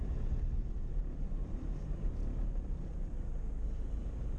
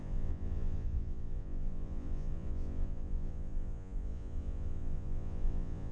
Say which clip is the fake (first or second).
second